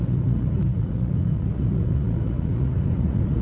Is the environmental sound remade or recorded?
remade